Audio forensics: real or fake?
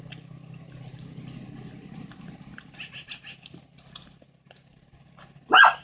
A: real